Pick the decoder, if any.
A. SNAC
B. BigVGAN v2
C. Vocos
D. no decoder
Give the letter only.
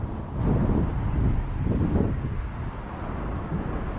D